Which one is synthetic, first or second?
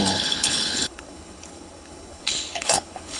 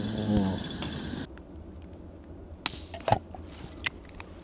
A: first